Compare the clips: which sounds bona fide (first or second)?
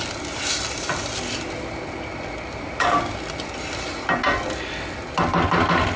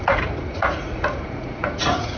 first